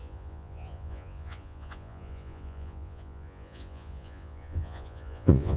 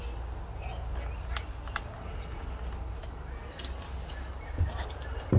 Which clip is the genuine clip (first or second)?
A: second